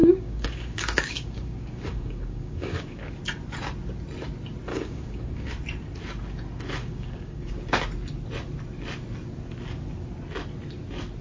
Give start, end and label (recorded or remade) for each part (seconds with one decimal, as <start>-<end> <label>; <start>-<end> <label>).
0.0-3.1 remade; 3.1-4.7 recorded; 4.7-5.5 remade; 5.5-6.8 recorded; 6.8-7.5 remade; 7.5-11.2 recorded